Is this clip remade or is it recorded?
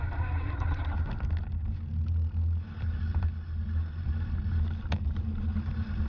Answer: recorded